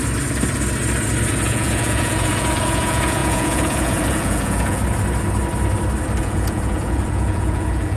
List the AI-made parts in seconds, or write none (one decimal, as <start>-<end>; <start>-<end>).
1.3-4.8; 6.2-8.0